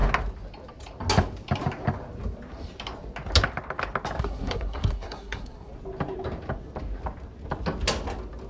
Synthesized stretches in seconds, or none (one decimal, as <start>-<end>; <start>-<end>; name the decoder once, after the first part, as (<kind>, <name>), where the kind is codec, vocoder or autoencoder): 4.2-5.7 (codec, SNAC)